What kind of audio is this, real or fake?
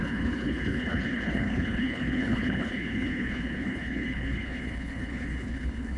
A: fake